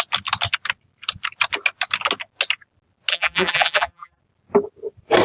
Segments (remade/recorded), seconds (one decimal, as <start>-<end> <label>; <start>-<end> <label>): 0.0-3.1 recorded; 3.1-4.2 remade; 4.2-5.2 recorded